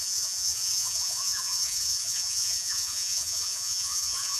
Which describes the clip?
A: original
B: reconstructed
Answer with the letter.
B